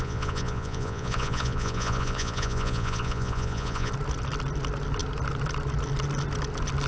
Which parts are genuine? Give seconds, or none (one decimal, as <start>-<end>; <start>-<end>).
3.9-6.9